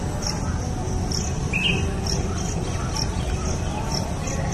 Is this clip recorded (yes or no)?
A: yes